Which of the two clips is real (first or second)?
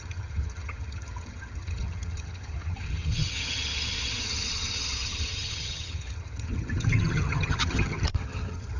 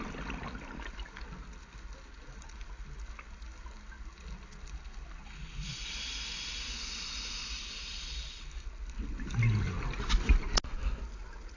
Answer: second